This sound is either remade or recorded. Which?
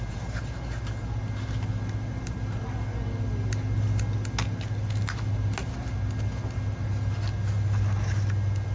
recorded